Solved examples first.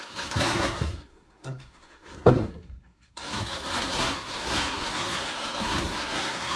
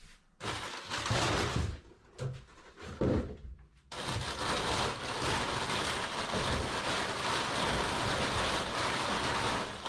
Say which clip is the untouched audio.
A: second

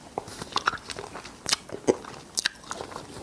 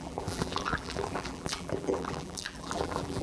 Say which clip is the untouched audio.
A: first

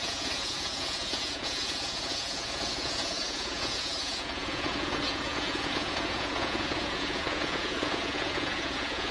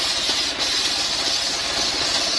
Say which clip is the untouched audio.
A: second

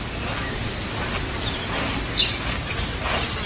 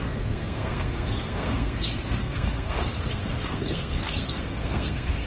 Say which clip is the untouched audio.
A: first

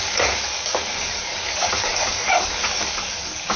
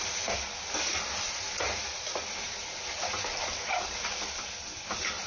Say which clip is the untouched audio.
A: second